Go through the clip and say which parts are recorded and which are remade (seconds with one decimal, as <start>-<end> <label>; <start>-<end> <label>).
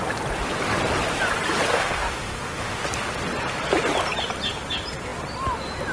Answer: 0.0-1.7 recorded; 1.7-2.8 remade; 2.8-5.9 recorded